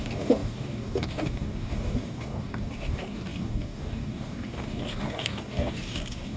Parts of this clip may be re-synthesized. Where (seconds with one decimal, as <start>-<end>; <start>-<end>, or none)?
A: 0.0-6.4